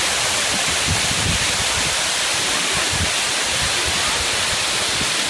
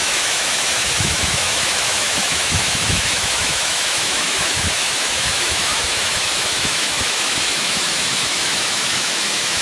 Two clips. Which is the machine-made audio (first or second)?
second